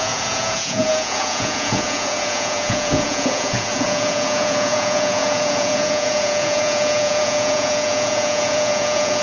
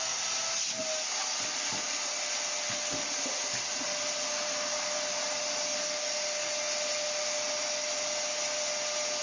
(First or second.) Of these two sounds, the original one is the second